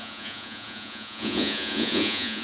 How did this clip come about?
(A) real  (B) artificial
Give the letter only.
B